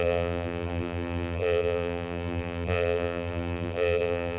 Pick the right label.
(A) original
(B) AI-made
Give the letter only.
B